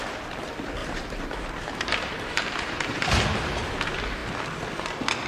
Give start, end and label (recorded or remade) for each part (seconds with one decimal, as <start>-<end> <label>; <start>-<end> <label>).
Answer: 0.0-0.8 recorded; 0.8-3.2 remade; 3.2-5.3 recorded